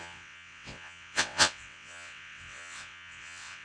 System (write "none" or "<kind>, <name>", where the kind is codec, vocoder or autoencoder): vocoder, WaveNeXt